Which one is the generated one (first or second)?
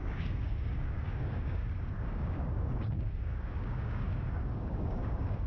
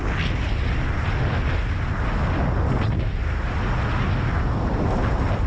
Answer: first